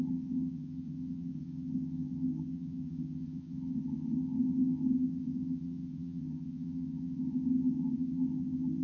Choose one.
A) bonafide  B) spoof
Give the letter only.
B